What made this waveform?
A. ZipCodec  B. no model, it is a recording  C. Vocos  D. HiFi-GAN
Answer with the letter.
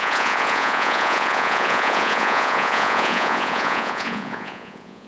C